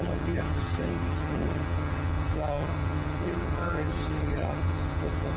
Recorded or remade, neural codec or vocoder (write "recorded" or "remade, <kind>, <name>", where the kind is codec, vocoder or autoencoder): remade, vocoder, HiFi-GAN